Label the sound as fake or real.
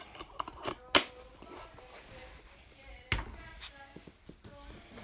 real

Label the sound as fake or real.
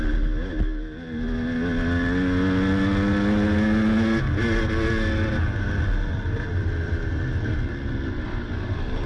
real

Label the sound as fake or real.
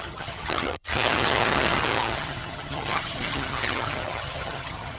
fake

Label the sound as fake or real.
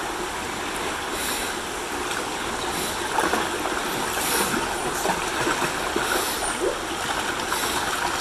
real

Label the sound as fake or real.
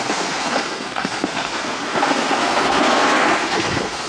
fake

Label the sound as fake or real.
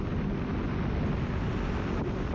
real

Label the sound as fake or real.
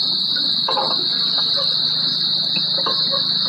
real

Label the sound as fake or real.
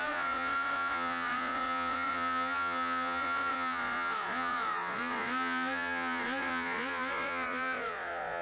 fake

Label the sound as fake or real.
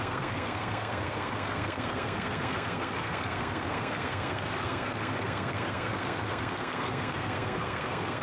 fake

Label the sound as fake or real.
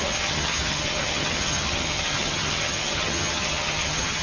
fake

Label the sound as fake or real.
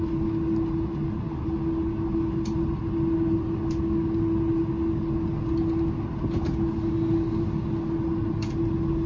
real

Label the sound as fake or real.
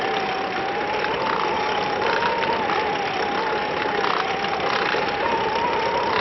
real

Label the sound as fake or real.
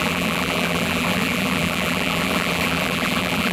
fake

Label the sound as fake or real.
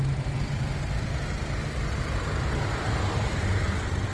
real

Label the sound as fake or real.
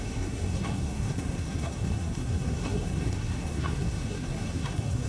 fake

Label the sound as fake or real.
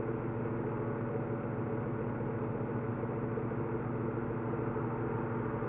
real